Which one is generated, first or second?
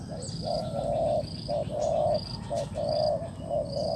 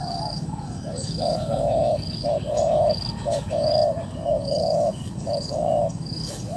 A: second